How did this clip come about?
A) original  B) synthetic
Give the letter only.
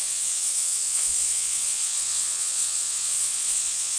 B